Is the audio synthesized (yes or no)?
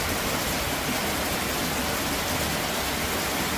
no